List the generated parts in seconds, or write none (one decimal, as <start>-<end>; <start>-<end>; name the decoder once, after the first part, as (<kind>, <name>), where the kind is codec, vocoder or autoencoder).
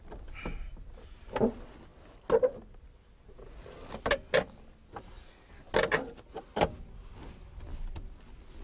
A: none